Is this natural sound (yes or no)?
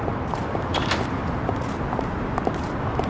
yes